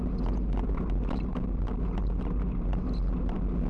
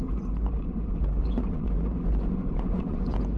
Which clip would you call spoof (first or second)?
second